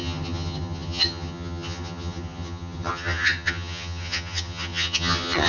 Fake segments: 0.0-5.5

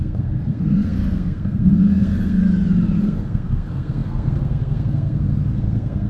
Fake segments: 0.0-2.4; 3.0-6.1